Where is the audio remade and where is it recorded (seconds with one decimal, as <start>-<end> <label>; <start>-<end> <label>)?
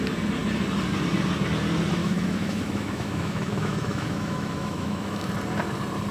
0.0-2.0 recorded; 2.0-5.3 remade; 5.3-6.1 recorded